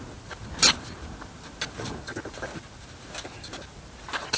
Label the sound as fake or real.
real